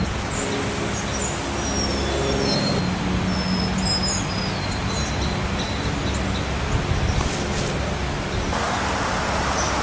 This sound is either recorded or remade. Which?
recorded